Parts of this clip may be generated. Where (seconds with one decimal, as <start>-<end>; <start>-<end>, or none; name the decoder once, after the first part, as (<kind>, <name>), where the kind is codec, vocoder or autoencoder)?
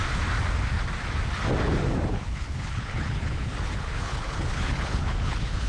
2.1-5.7 (codec, HILCodec)